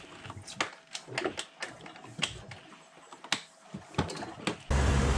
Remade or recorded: recorded